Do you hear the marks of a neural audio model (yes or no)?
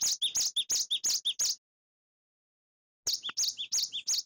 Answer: no